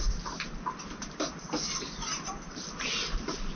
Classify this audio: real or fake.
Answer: real